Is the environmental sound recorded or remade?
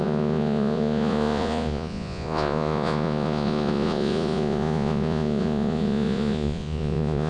remade